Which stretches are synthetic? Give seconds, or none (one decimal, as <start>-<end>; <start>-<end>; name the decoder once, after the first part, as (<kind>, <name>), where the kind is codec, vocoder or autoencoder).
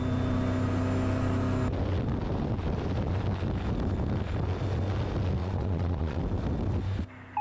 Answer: 5.4-6.2 (vocoder, Vocos)